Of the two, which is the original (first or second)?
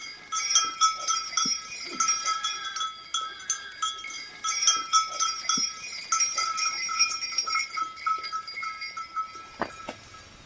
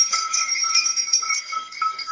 first